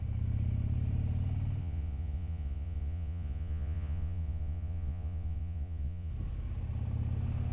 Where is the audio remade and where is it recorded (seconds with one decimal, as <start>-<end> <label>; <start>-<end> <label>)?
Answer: 0.0-1.6 recorded; 1.6-6.1 remade; 6.1-7.5 recorded